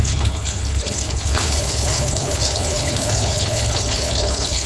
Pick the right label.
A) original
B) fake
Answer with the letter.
B